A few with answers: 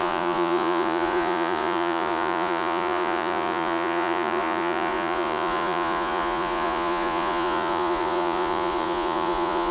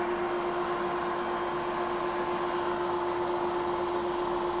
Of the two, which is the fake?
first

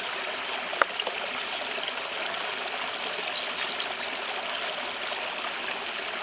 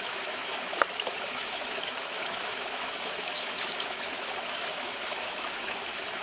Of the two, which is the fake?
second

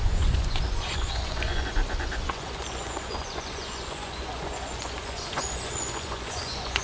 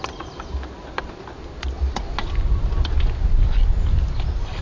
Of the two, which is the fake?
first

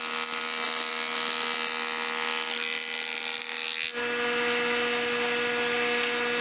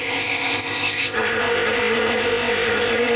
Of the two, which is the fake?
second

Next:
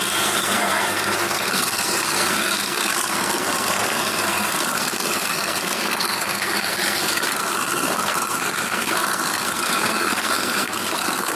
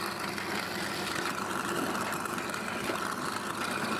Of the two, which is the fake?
first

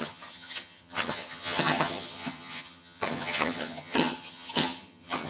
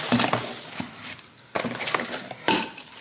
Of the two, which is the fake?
first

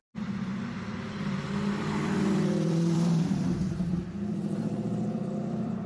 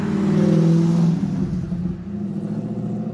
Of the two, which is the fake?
first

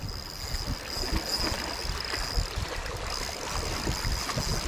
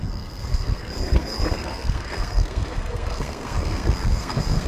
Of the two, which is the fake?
second